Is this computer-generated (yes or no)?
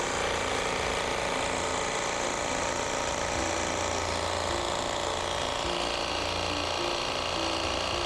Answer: no